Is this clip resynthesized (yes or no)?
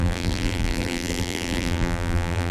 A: yes